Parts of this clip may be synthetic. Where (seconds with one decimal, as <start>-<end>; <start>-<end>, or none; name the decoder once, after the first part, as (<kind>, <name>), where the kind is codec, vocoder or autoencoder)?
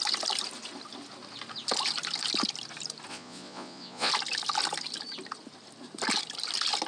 3.1-4.1 (vocoder, Vocos)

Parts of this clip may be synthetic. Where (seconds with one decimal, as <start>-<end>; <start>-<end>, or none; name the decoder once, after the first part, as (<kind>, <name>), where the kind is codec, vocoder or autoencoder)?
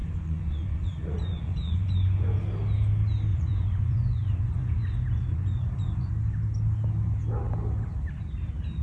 0.0-2.3 (vocoder, Vocos); 3.3-6.1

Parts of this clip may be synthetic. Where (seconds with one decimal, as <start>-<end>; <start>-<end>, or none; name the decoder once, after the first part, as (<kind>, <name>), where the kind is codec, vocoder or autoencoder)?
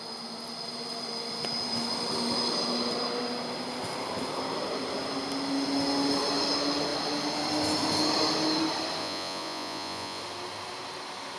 9.0-10.2 (vocoder, Vocos)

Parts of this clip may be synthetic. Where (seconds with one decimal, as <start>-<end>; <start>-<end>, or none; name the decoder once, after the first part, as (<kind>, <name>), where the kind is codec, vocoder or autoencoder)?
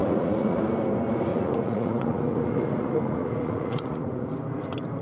0.0-0.6 (vocoder, Vocos); 1.3-4.3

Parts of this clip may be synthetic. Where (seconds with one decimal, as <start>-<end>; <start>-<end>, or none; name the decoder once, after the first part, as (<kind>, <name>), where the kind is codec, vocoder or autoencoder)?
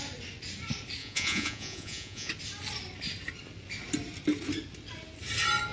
1.0-2.3 (vocoder, Vocos)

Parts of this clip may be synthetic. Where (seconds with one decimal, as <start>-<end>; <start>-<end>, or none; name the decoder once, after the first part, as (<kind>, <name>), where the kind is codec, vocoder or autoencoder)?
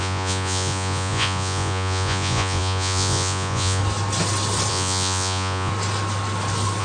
0.0-3.8 (vocoder, Vocos); 4.7-5.7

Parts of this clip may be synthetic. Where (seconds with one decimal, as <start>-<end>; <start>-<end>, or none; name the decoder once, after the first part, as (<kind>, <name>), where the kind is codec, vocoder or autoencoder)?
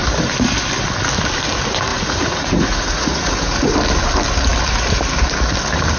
1.9-3.7 (vocoder, Vocos)